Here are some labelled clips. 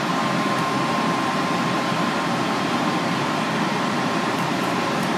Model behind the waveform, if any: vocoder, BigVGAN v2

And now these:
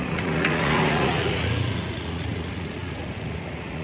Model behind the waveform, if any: vocoder, Vocos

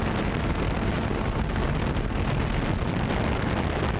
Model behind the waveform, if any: none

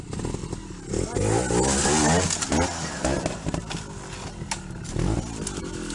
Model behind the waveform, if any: none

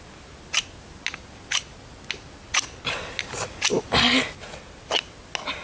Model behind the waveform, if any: none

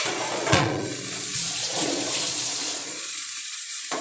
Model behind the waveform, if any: vocoder, Vocos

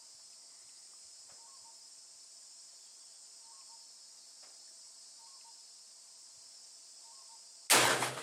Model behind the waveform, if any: none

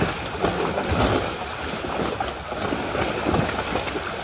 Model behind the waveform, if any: none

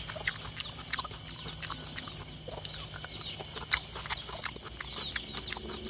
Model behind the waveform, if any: none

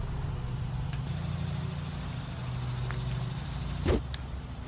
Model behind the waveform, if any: none